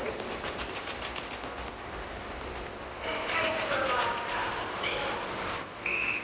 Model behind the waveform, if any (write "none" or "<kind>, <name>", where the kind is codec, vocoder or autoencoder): none